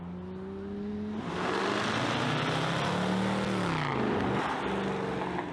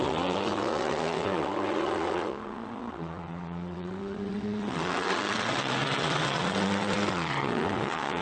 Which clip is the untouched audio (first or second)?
first